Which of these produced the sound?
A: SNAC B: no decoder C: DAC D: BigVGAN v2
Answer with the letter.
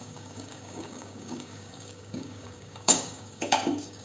C